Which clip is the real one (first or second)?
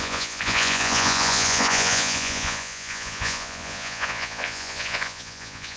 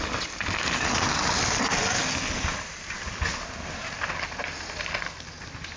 second